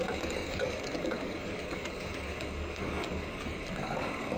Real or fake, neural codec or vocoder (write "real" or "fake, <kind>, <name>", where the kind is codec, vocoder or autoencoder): fake, codec, DAC